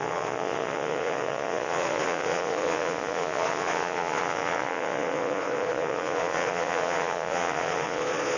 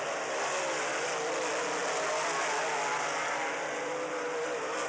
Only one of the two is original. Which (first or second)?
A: second